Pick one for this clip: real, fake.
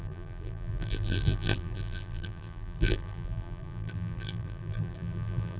fake